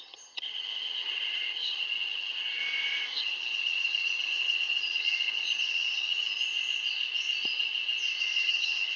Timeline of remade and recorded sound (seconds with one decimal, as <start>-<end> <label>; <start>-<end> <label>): 0.0-2.6 remade; 2.6-3.2 recorded; 3.2-6.4 remade; 6.4-8.2 recorded; 8.2-9.0 remade